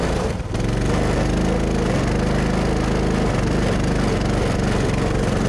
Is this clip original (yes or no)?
yes